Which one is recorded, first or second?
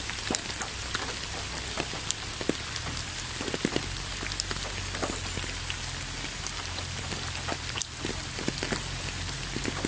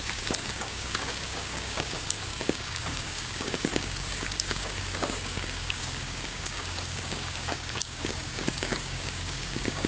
first